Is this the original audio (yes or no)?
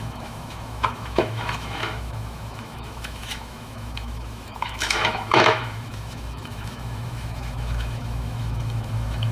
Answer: no